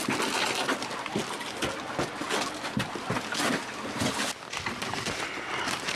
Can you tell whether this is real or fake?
real